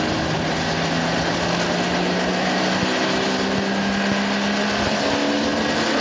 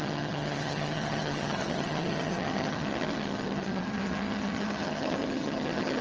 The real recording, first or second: first